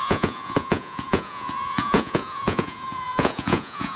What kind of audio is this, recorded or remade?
remade